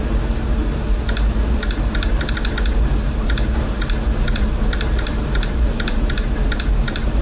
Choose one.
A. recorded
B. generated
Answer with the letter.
B